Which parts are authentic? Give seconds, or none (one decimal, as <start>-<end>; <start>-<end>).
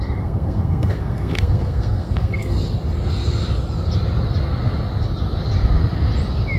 2.6-6.6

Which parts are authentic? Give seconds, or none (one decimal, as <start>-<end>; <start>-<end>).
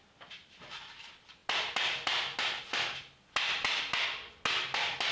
0.0-5.1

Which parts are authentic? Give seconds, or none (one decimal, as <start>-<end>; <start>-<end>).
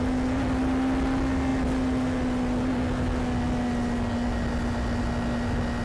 0.0-5.8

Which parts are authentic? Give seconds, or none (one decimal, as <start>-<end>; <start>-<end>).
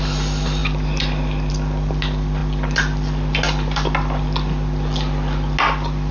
0.0-6.1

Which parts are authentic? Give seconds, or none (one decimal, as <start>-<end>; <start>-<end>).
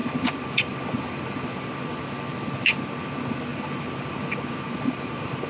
1.7-3.5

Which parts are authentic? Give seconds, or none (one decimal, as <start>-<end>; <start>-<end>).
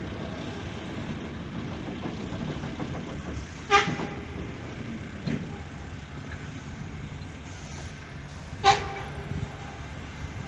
0.0-10.5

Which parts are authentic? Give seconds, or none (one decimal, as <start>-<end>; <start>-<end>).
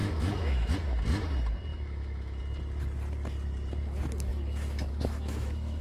0.7-1.7; 2.4-4.3